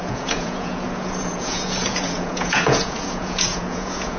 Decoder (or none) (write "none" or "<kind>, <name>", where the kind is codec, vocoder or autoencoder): vocoder, Vocos